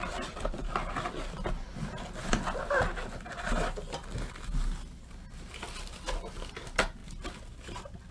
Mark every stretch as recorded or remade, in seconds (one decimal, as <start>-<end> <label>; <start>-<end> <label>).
0.0-8.1 recorded